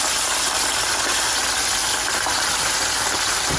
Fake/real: real